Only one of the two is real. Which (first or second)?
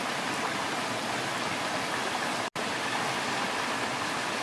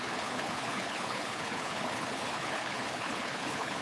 first